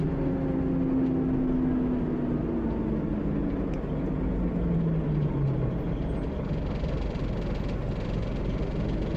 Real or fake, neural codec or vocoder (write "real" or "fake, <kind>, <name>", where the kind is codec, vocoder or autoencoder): real